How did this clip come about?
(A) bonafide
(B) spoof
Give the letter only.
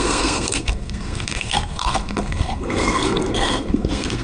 B